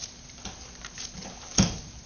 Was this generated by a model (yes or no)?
no